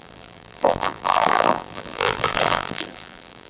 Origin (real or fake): fake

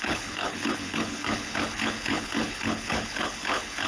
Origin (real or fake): fake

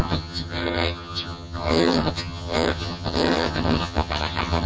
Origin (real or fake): fake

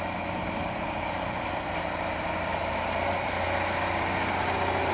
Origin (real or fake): real